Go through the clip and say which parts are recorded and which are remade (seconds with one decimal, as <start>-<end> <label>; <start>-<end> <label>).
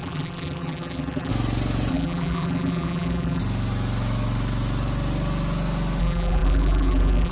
0.0-1.3 remade; 1.3-1.9 recorded; 1.9-3.4 remade; 3.4-6.0 recorded; 6.0-7.3 remade